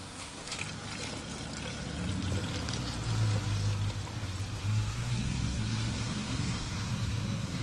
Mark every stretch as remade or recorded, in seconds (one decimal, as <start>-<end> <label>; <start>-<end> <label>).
0.0-0.6 remade; 0.6-4.6 recorded; 4.6-7.6 remade